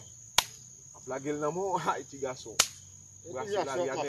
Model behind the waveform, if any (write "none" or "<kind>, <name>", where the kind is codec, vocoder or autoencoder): none